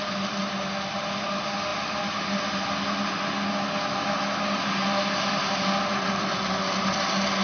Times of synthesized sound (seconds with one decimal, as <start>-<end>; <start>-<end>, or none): none